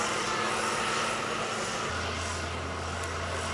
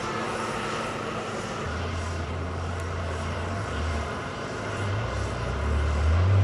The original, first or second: first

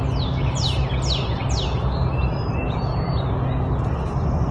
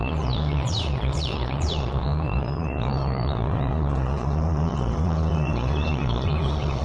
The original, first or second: first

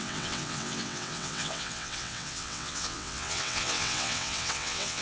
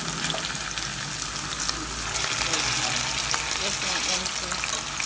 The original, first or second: second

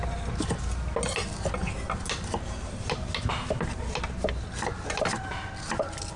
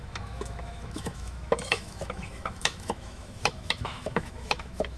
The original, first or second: first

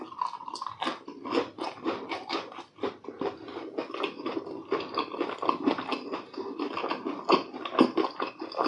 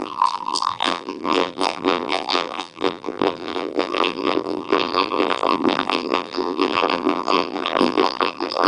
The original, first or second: first